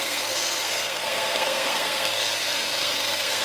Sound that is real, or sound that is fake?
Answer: fake